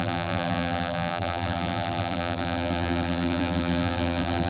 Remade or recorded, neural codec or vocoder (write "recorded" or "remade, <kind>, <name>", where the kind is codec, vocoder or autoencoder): remade, vocoder, BigVGAN v2